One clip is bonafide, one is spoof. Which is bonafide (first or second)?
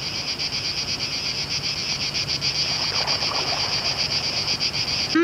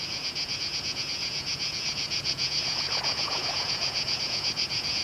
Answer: first